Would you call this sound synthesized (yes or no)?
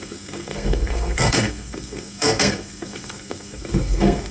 yes